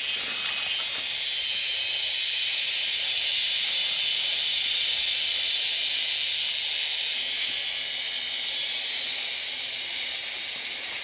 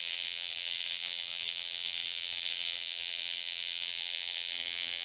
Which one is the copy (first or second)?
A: second